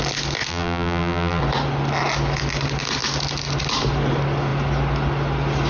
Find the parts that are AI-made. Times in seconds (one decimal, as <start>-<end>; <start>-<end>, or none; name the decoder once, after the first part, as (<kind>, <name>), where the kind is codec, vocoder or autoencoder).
0.5-1.4 (vocoder, BigVGAN v2)